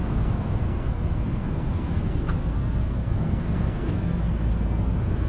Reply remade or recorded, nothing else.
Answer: remade